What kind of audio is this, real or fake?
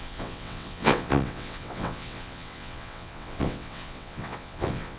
fake